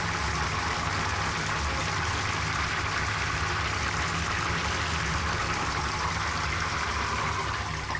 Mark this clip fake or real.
real